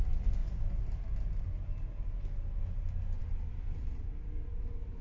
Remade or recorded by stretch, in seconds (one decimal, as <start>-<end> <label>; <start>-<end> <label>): 0.0-5.0 recorded